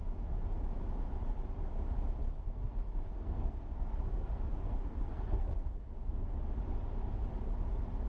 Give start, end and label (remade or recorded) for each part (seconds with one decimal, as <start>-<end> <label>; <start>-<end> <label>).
0.0-2.2 recorded; 2.2-6.4 remade; 6.4-8.1 recorded